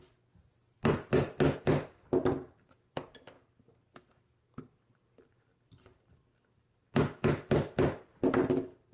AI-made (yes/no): no